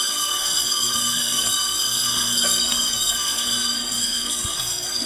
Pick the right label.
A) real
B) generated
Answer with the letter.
B